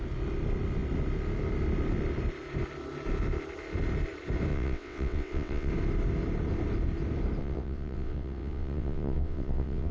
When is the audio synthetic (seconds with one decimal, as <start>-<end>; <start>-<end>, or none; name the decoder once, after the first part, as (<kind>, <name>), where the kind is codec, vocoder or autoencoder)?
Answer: 4.5-5.7 (vocoder, WaveNeXt); 7.4-9.9